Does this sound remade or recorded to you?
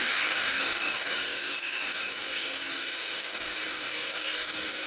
remade